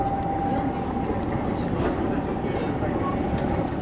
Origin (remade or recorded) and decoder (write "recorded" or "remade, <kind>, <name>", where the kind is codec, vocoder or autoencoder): recorded